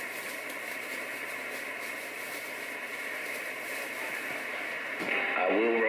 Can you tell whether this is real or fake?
real